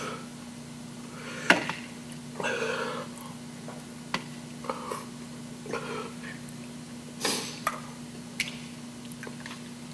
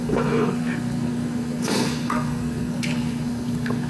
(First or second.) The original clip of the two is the first